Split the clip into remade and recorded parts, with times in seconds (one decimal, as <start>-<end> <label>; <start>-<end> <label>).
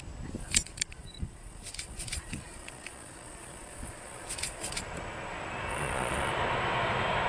0.0-0.4 recorded; 0.4-4.8 remade; 4.8-5.7 recorded; 5.7-6.3 remade; 6.3-7.3 recorded